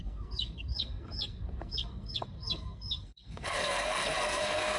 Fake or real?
fake